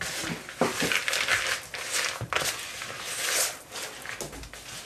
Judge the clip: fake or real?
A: real